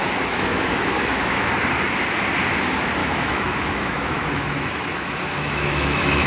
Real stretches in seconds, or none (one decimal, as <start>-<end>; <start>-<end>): 1.5-3.0